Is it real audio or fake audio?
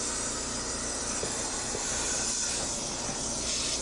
real